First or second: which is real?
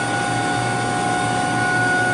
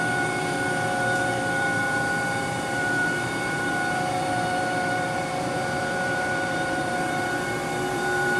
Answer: first